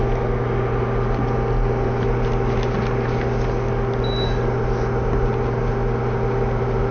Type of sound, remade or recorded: recorded